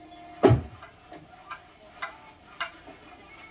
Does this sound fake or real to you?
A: real